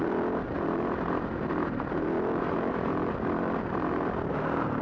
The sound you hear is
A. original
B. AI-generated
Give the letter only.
B